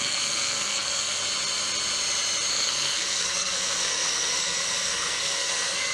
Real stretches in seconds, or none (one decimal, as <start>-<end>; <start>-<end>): 1.2-2.5